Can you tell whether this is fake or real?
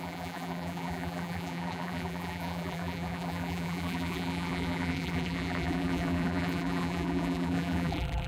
fake